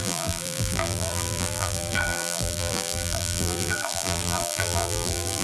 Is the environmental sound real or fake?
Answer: fake